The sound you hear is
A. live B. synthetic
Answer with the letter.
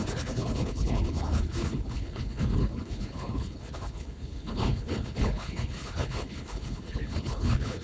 B